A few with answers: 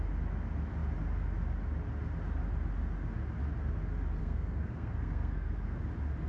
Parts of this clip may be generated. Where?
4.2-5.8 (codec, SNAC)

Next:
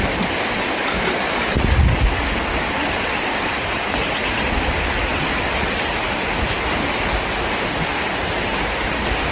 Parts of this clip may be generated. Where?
none

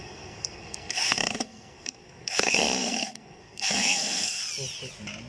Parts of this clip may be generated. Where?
0.0-4.4 (codec, SNAC)

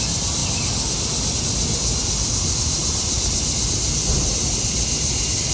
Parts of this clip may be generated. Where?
none

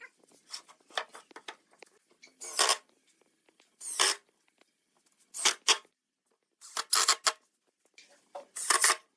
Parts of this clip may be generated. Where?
none

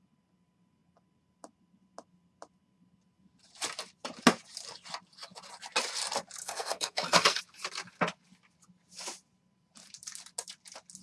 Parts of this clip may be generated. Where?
6.4-7.4 (codec, SNAC)